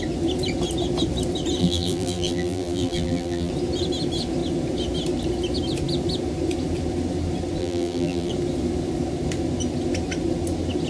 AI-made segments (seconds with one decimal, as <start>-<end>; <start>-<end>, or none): 1.6-3.5; 7.6-8.3